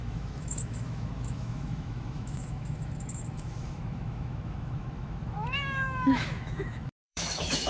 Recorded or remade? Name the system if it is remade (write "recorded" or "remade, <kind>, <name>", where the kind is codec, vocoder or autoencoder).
remade, autoencoder, DAC-VAE